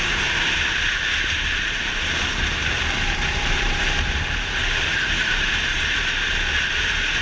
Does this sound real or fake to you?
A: fake